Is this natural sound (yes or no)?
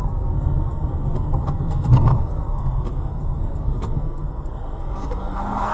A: no